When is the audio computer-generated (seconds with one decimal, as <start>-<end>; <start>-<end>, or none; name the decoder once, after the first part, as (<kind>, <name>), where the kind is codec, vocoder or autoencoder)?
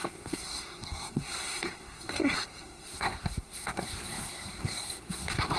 0.0-5.6 (codec, SNAC)